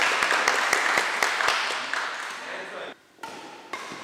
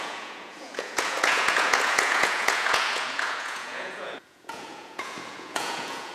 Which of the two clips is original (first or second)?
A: first